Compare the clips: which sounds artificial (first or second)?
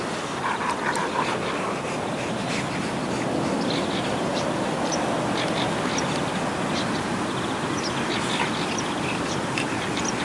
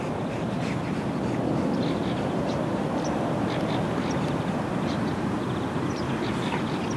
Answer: second